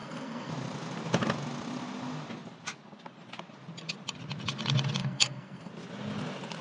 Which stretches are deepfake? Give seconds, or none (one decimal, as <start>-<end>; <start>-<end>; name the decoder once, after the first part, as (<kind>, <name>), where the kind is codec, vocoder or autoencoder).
0.0-0.5 (codec, SNAC); 5.0-5.7